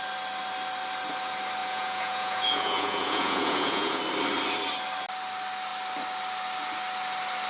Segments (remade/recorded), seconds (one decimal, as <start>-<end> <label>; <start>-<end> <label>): 0.0-1.6 recorded; 1.6-4.0 remade; 4.0-7.5 recorded